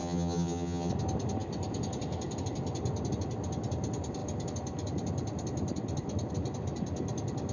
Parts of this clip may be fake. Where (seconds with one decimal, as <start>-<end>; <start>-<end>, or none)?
0.0-0.9